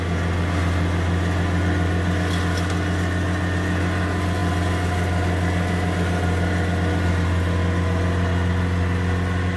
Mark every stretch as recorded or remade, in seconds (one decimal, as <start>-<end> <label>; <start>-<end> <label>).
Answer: 0.0-9.6 recorded